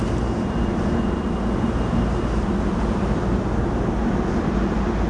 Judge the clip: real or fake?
real